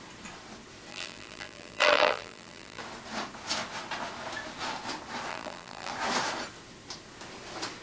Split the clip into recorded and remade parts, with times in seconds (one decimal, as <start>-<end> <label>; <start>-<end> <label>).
0.0-0.9 recorded; 0.9-2.8 remade; 2.8-5.3 recorded; 5.3-5.9 remade; 5.9-7.8 recorded